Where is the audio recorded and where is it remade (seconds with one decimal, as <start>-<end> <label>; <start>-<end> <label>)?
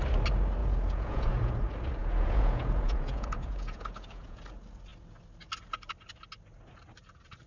0.0-0.6 recorded; 0.6-1.5 remade; 1.5-2.0 recorded; 2.0-4.4 remade; 4.4-7.5 recorded